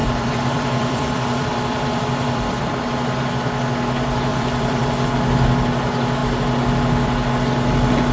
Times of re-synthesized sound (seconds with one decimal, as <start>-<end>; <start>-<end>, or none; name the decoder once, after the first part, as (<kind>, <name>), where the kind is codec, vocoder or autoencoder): 0.0-2.6 (vocoder, BigVGAN v2); 4.3-5.1